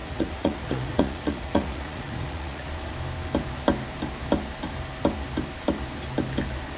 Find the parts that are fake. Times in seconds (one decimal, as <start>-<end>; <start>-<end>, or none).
0.0-2.7